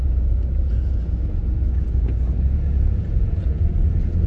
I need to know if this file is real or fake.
fake